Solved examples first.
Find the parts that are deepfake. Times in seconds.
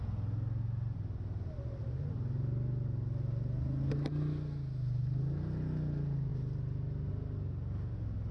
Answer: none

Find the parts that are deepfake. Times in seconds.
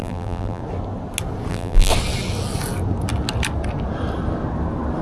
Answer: 0.0-0.6 (vocoder, BigVGAN v2); 1.5-1.9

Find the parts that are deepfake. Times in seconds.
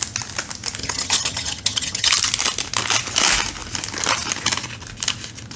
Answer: 0.8-2.1 (vocoder, HiFi-GAN)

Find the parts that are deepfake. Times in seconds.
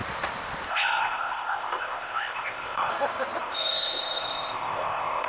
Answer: 0.7-2.9 (codec, ZipCodec); 3.4-5.3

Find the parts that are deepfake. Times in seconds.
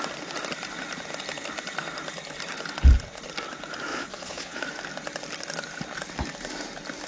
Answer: 3.9-4.6 (vocoder, Vocos)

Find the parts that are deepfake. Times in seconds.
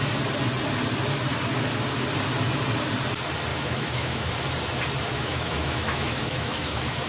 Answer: 3.5-4.3 (autoencoder, DAC-VAE); 5.1-7.1